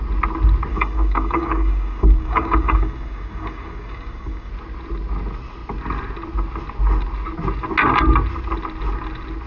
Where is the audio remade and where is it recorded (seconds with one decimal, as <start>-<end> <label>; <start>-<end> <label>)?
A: 0.0-0.7 recorded; 0.7-4.5 remade; 4.5-9.5 recorded